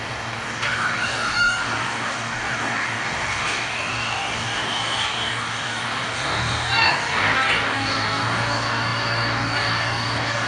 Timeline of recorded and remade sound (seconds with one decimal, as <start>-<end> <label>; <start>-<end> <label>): 0.0-10.5 remade